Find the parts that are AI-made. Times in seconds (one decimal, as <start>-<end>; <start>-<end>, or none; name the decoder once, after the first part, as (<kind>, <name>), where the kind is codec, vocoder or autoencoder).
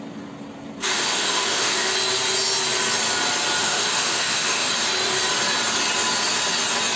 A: 0.8-1.9 (autoencoder, DAC-VAE); 3.6-4.7